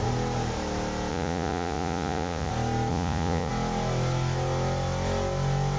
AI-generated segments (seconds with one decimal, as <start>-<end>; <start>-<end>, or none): 1.1-2.5; 2.9-3.5